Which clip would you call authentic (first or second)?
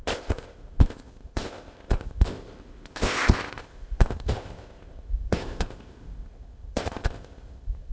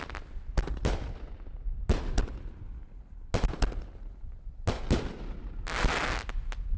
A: second